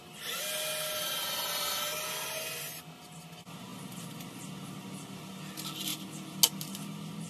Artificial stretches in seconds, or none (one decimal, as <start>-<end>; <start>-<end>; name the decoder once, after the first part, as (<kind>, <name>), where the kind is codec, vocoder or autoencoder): none